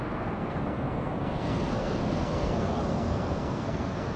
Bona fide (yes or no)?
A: no